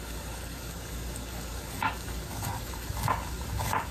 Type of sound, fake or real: fake